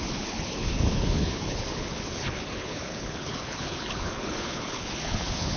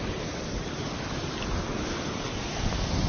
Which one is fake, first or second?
first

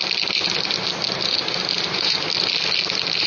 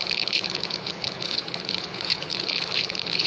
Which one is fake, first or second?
second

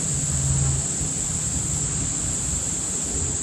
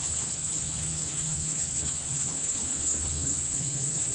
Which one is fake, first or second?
second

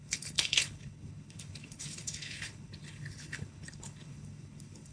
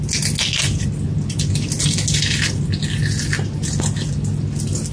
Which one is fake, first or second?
first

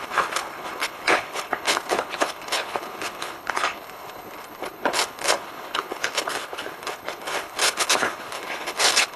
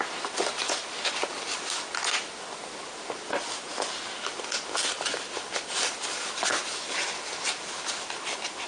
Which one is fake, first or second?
first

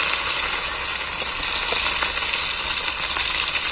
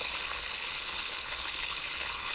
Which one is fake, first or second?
second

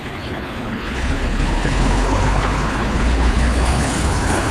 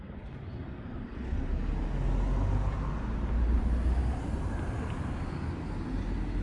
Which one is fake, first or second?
first